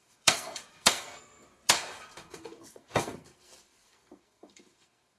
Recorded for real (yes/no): no